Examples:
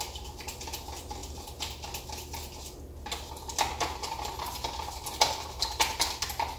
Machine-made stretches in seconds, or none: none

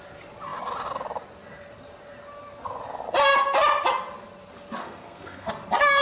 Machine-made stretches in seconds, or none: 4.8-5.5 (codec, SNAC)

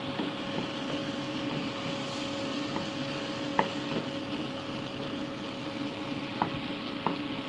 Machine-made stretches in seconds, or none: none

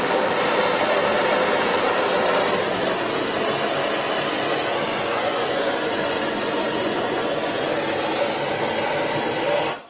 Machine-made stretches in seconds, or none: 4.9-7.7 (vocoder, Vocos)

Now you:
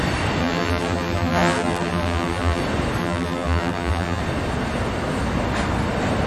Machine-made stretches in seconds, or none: 0.4-2.6 (vocoder, BigVGAN v2); 3.0-4.2